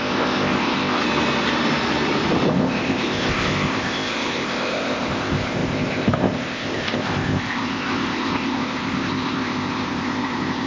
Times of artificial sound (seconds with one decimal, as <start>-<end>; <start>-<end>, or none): 0.0-1.0; 2.5-10.7